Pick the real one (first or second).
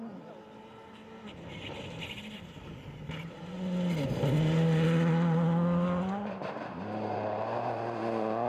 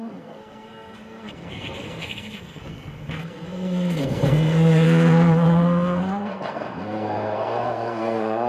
first